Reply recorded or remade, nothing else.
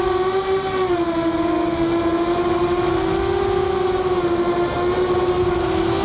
recorded